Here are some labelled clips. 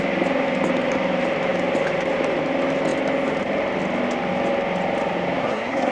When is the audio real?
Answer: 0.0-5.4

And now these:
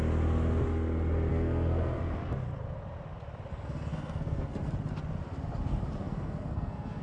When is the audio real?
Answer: 0.0-1.3; 2.0-3.5; 4.7-6.0

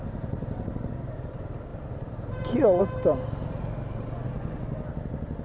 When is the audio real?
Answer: 0.0-5.4

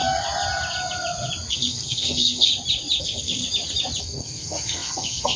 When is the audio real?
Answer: 0.0-1.5; 2.5-3.0; 3.4-4.0